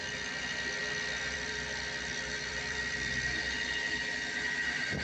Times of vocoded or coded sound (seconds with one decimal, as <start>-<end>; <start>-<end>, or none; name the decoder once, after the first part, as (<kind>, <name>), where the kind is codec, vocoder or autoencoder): 0.8-3.4 (vocoder, BigVGAN v2)